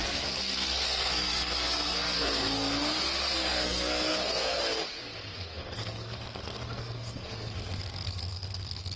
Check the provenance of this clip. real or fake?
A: fake